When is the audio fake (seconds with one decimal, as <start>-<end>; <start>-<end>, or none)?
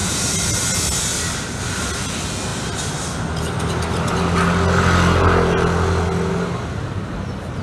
0.0-0.6